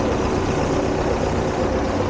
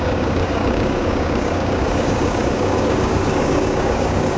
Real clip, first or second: first